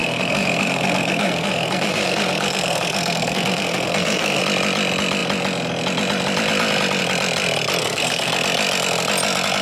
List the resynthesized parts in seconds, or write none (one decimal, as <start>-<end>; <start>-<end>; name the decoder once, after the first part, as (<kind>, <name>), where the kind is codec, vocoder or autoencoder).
0.0-4.4 (codec, SNAC); 7.8-8.3